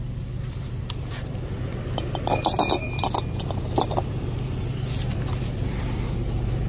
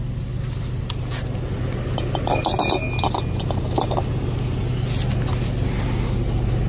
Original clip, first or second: second